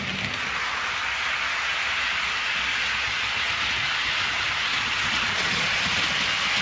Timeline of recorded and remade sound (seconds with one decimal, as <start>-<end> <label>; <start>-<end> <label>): 0.0-4.7 recorded; 4.7-5.8 remade; 5.8-6.6 recorded